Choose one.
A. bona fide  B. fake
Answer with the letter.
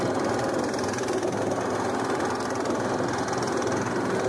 A